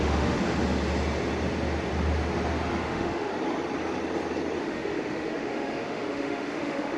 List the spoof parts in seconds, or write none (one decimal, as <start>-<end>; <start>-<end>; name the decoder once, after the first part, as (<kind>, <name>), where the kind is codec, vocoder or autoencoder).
0.0-0.4 (autoencoder, DAC-VAE); 2.8-3.3; 4.6-7.0